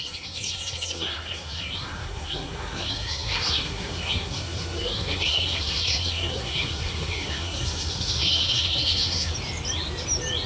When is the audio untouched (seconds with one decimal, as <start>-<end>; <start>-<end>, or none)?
9.3-10.5